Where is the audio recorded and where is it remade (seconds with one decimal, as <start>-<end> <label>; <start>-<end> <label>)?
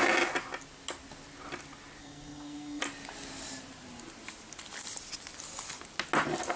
0.0-2.0 recorded; 2.0-2.8 remade; 2.8-6.6 recorded